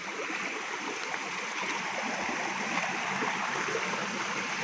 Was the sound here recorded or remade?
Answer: recorded